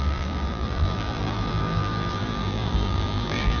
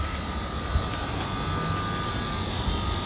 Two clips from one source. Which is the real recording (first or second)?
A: second